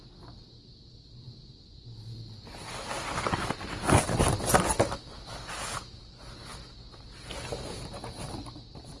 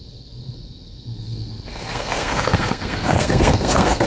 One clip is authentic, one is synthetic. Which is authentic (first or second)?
first